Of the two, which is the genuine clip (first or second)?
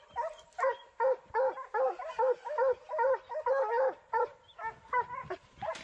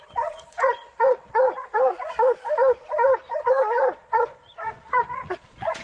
first